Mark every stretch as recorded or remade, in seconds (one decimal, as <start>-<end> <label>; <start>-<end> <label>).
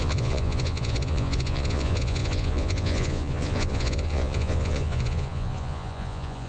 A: 0.0-6.5 remade